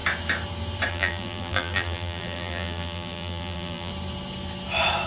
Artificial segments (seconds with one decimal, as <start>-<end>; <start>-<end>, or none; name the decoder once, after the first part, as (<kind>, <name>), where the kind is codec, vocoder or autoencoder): 0.9-3.9 (vocoder, BigVGAN v2)